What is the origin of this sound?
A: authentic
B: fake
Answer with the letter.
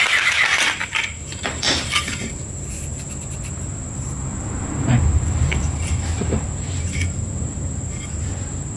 B